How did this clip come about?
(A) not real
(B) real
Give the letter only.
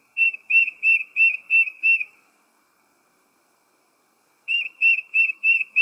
A